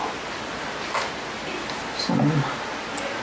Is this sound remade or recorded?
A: recorded